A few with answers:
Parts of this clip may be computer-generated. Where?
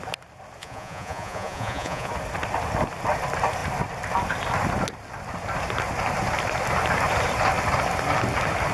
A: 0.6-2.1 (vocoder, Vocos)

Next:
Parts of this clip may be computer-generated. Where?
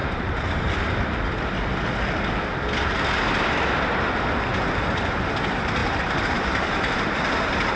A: 0.0-0.7 (vocoder, BigVGAN v2); 4.5-5.3; 5.8-7.2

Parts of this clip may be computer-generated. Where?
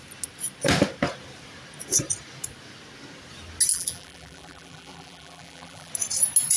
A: 3.7-5.9 (vocoder, BigVGAN v2)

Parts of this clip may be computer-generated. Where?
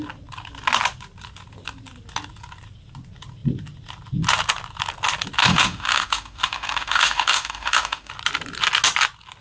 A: 5.4-8.1 (autoencoder, DAC-VAE)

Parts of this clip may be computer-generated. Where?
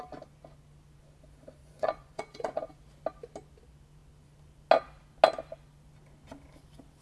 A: 1.6-2.7 (vocoder, Vocos)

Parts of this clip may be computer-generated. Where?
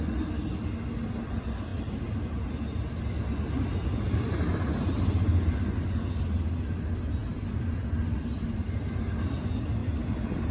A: none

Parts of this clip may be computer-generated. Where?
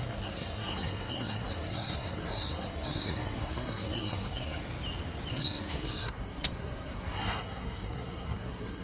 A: 0.0-4.6 (codec, SNAC); 5.3-8.8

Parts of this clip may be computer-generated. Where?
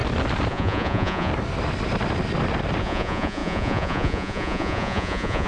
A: 0.5-1.3 (vocoder, Vocos); 2.8-5.5